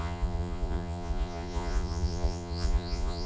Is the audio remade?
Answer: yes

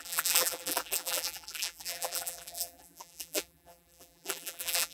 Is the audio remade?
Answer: yes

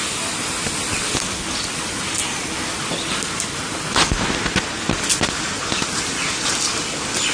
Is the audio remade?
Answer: no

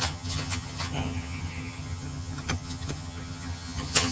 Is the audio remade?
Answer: yes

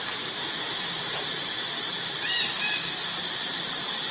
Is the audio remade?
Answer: yes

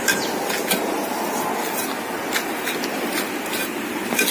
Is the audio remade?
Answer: no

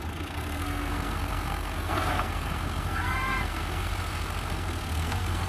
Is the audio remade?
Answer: yes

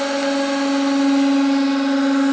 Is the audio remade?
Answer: no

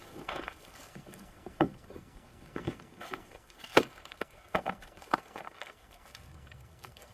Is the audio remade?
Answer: yes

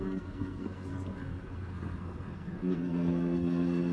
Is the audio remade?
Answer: yes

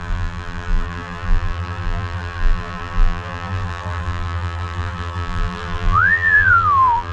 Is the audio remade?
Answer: yes